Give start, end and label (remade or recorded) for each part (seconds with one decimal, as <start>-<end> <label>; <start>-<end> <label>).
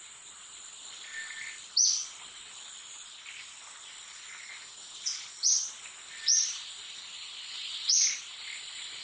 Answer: 0.0-9.0 recorded